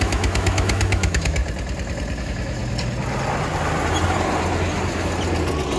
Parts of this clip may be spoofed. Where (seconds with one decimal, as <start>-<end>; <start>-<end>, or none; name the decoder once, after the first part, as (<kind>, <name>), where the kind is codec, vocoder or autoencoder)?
0.0-1.4 (autoencoder, DAC-VAE); 2.2-2.6